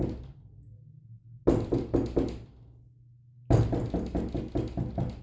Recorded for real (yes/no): yes